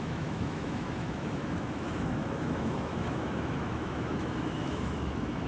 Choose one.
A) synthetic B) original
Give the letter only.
A